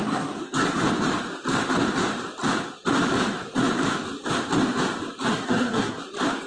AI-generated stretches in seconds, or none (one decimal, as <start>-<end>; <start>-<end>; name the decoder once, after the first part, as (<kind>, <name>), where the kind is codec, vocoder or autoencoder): 0.0-0.8 (codec, SNAC); 5.3-6.0